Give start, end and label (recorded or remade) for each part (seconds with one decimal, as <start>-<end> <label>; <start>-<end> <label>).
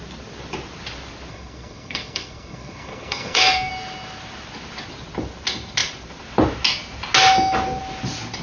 0.0-1.3 recorded; 1.3-3.7 remade; 3.7-8.4 recorded